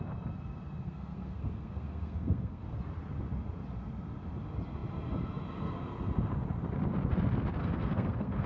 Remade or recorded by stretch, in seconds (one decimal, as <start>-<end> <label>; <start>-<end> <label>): 0.0-0.8 recorded; 0.8-2.8 remade; 2.8-7.6 recorded; 7.6-8.5 remade